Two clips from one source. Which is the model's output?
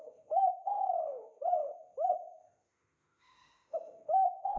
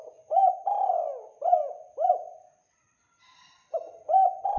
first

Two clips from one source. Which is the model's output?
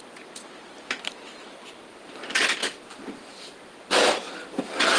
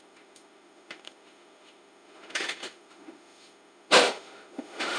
second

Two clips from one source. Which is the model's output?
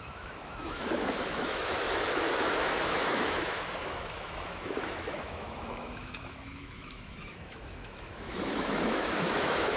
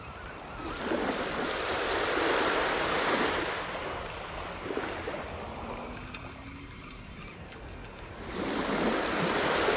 first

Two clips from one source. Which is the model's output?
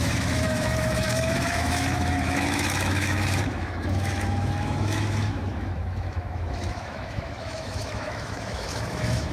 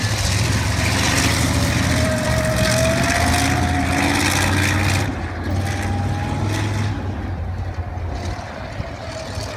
first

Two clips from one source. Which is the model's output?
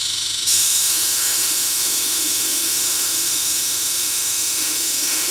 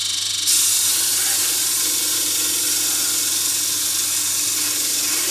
first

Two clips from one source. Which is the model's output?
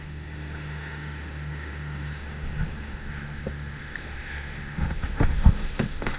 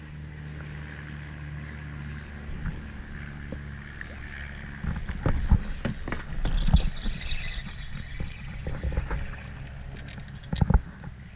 first